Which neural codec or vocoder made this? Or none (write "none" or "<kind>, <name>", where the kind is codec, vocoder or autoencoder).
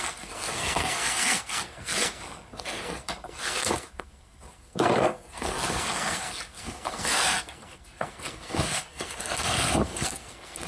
codec, SNAC